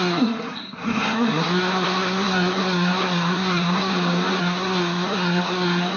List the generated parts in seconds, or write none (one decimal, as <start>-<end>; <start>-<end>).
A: 0.0-3.9; 4.4-6.0